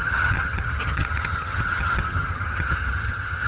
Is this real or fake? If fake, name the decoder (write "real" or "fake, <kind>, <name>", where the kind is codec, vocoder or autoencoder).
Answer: fake, vocoder, HiFi-GAN